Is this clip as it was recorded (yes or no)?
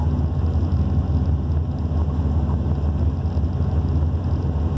yes